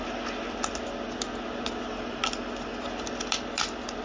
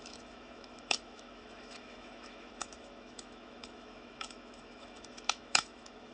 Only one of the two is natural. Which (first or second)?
first